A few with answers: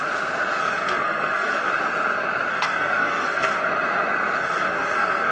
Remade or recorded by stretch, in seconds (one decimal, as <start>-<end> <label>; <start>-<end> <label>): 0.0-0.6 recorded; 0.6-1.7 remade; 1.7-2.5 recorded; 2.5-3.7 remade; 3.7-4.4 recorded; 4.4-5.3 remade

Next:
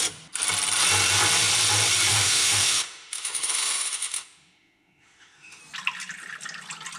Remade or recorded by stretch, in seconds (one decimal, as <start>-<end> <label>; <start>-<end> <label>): 0.0-2.1 recorded; 2.1-5.6 remade; 5.6-7.0 recorded

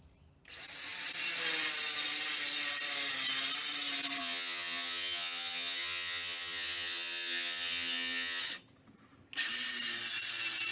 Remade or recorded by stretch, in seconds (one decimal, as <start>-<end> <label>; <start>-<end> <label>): 0.0-4.2 recorded; 4.2-8.4 remade; 8.4-10.7 recorded

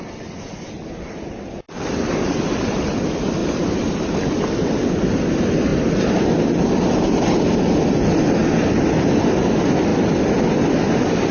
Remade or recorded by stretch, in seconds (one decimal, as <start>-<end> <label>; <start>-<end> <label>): 0.0-11.3 recorded

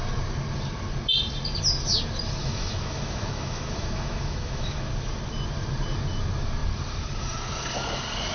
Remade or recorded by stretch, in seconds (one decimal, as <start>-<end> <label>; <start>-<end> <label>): 0.0-2.4 recorded; 2.4-4.9 remade; 4.9-8.3 recorded